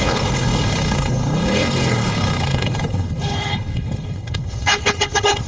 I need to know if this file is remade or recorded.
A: remade